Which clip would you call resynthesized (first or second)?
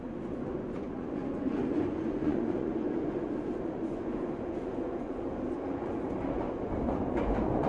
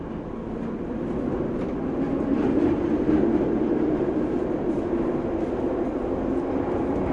first